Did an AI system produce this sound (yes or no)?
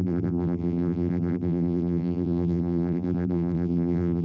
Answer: yes